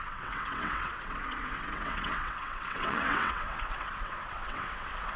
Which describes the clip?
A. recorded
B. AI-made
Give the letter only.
B